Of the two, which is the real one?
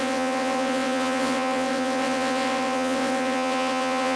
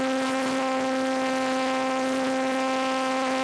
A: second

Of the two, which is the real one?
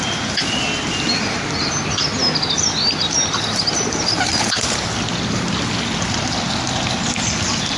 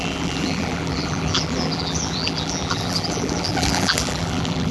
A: first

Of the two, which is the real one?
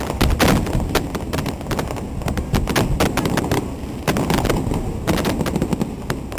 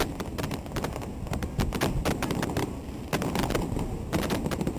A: first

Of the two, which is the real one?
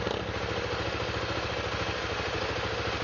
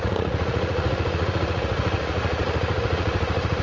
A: first